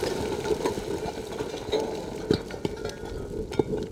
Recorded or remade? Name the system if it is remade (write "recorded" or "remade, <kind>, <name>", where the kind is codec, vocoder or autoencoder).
recorded